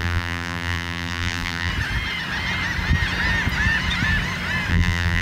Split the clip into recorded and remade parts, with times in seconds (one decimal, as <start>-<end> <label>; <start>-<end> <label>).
0.0-1.7 remade; 1.7-4.7 recorded; 4.7-5.2 remade